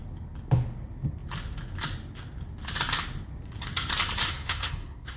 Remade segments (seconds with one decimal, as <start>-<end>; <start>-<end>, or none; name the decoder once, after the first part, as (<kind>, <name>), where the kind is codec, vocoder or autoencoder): 4.3-5.2 (codec, SNAC)